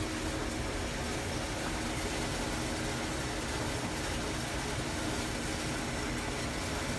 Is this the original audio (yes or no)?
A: yes